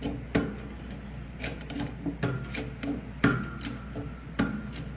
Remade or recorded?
recorded